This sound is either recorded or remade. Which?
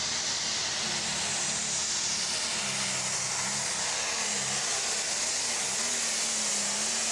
recorded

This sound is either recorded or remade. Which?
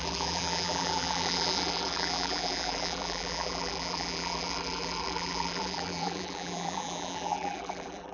remade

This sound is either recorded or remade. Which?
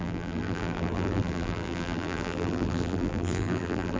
remade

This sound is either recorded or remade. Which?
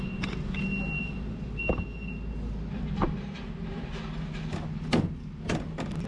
recorded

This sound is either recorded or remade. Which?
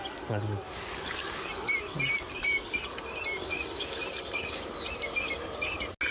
recorded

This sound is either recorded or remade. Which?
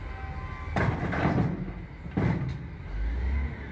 recorded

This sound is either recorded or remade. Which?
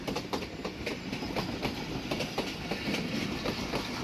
recorded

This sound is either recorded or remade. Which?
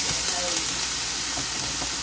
recorded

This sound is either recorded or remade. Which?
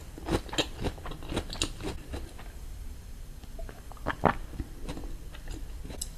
recorded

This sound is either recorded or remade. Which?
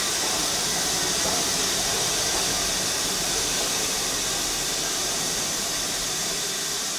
recorded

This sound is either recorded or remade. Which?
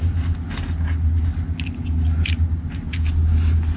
recorded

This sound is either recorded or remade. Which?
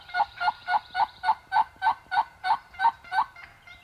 remade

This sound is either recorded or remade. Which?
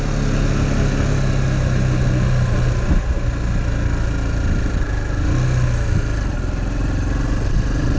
recorded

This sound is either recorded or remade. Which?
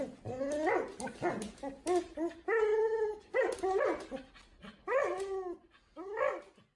recorded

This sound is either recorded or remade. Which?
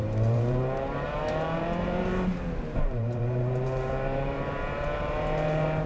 remade